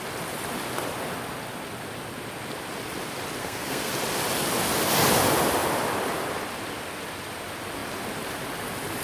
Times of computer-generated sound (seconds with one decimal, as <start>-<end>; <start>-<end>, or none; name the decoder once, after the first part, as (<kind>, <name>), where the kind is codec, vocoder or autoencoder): 3.4-3.9 (codec, SNAC)